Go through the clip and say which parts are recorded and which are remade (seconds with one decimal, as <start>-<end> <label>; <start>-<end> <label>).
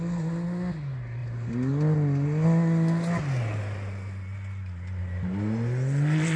0.0-6.4 recorded